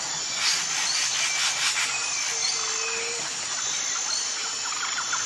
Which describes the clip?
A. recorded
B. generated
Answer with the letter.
A